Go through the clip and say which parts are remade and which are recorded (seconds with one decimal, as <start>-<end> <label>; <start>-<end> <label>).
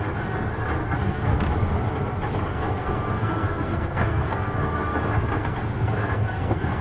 0.0-0.8 recorded; 0.8-1.4 remade; 1.4-2.5 recorded; 2.5-6.8 remade